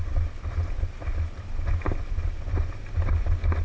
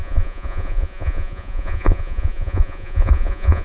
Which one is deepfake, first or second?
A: second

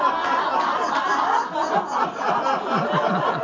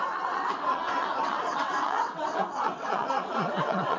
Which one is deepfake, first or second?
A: second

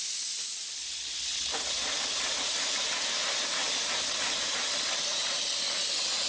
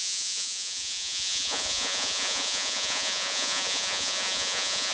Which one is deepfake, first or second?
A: second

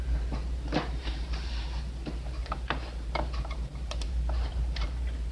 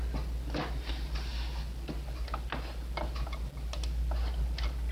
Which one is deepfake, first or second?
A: first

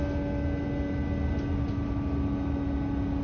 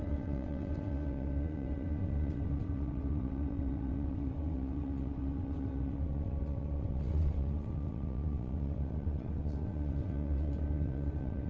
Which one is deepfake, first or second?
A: second